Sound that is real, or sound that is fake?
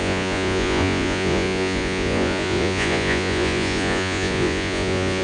fake